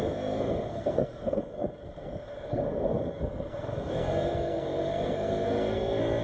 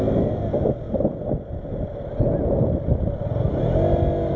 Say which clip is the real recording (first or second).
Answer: second